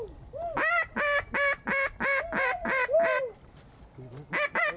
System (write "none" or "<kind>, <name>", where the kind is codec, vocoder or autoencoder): none